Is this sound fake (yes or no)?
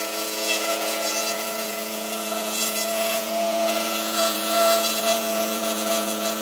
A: yes